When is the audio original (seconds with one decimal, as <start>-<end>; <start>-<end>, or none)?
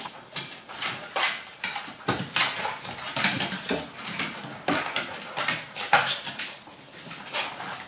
0.0-7.9